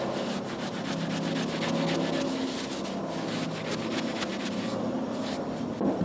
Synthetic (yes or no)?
no